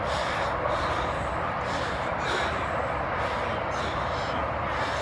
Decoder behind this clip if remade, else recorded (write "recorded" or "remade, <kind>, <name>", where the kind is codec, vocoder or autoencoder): recorded